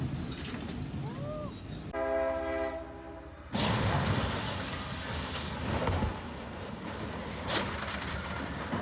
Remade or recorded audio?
recorded